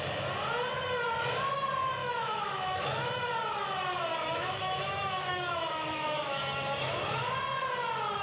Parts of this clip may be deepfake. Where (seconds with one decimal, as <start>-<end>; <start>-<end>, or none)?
2.0-3.2; 4.1-6.4